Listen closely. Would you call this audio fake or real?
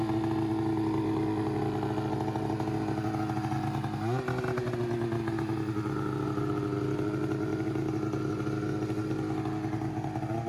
real